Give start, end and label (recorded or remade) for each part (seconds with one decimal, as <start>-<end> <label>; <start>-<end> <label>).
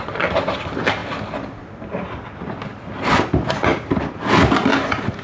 0.0-5.2 recorded